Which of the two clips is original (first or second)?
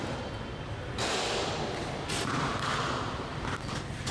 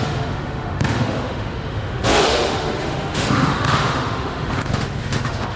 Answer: first